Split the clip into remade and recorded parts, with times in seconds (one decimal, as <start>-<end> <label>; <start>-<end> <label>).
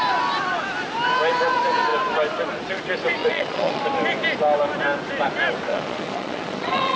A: 0.0-3.2 recorded; 3.2-3.8 remade; 3.8-5.7 recorded; 5.7-7.0 remade